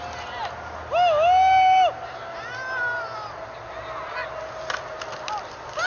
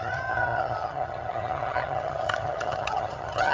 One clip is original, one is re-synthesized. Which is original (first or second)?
first